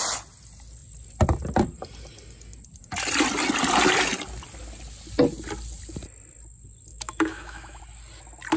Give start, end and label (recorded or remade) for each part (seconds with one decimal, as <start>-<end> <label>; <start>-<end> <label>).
0.0-6.9 recorded; 6.9-7.8 remade; 7.8-8.6 recorded